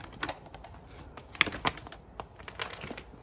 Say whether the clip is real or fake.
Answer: real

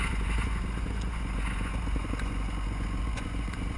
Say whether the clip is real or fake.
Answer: fake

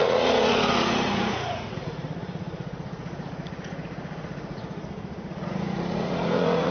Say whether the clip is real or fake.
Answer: fake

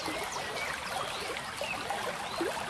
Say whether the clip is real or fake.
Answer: real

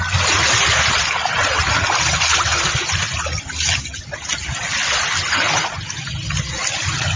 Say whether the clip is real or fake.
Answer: real